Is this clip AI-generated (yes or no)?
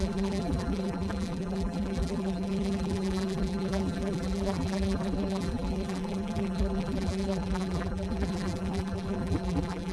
yes